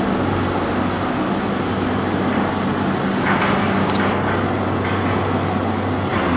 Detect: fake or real real